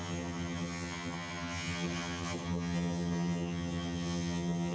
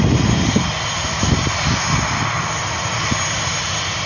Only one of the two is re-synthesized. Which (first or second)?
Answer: first